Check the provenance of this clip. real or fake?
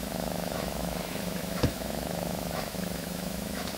fake